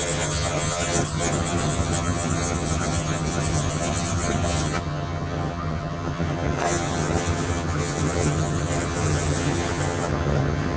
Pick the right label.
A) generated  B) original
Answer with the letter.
A